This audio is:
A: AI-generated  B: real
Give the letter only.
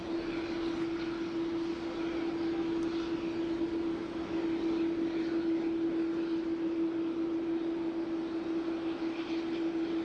B